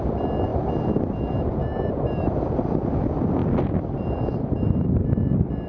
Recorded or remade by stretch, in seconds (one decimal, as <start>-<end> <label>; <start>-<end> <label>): 0.0-5.7 recorded